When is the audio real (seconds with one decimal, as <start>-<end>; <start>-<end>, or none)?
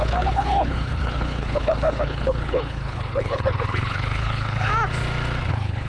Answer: 4.7-5.5